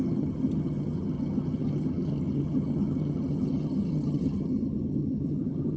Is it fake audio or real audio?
fake